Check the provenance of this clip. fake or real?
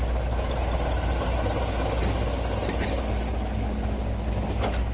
real